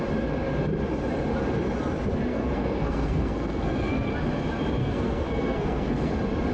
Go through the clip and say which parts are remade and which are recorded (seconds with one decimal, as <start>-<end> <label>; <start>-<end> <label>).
0.0-2.3 recorded; 2.3-4.1 remade; 4.1-4.8 recorded; 4.8-6.1 remade; 6.1-6.5 recorded

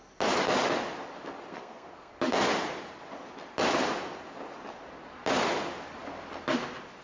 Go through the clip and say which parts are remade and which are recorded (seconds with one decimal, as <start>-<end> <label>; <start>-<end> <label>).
0.0-1.5 recorded; 1.5-2.1 remade; 2.1-7.0 recorded

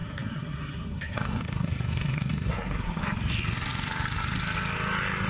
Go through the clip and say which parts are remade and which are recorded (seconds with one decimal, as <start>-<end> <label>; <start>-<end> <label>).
0.0-3.0 remade; 3.0-5.3 recorded

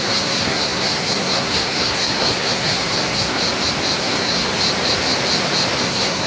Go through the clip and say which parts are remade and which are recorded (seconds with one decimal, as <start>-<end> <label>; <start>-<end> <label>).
0.0-3.4 remade; 3.4-4.0 recorded; 4.0-4.5 remade; 4.5-5.8 recorded; 5.8-6.3 remade

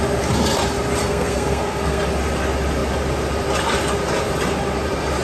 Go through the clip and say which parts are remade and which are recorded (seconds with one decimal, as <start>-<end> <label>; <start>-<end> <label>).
0.0-1.0 recorded; 1.0-2.0 remade; 2.0-5.2 recorded